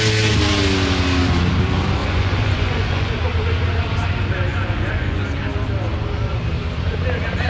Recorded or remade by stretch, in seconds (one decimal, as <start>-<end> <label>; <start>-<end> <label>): 0.0-2.0 recorded; 2.0-3.1 remade; 3.1-4.5 recorded; 4.5-5.2 remade; 5.2-7.5 recorded